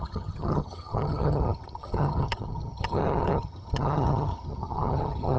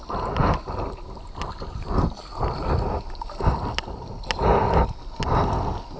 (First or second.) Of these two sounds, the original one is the second